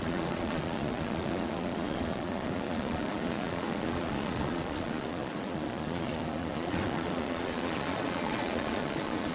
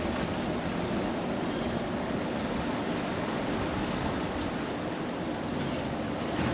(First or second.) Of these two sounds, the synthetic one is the first